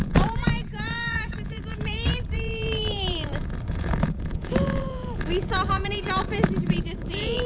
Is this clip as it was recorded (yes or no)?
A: no